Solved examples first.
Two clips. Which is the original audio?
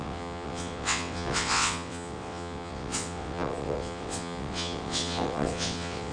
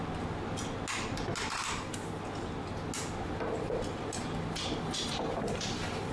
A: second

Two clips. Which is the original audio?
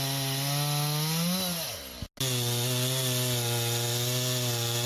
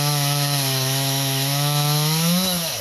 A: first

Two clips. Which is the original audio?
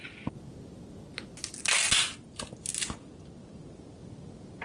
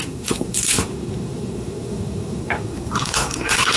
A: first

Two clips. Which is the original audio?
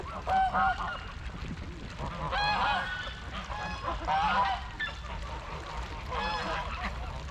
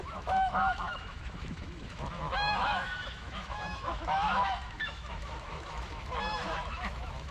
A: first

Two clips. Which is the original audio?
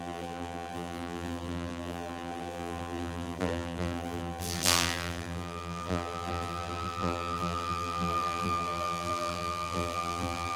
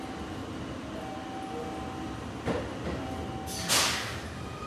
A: second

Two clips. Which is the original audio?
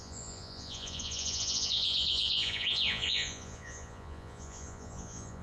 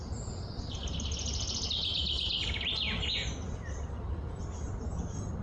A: second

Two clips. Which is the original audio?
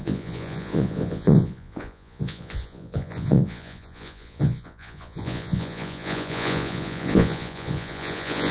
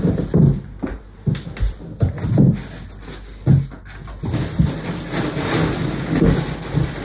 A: second